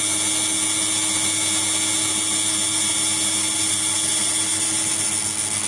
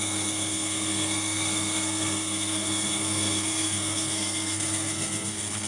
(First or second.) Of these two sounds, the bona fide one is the first